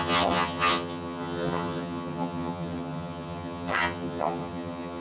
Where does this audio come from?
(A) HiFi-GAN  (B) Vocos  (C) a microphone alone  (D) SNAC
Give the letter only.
A